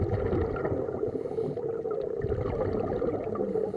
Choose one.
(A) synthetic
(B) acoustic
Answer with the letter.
B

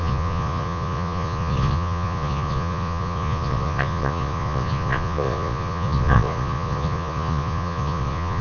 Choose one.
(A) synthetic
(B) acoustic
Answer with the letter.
A